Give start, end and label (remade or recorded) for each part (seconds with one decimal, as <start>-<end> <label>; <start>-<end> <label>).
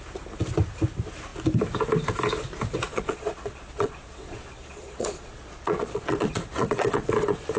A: 0.0-2.9 recorded; 2.9-7.6 remade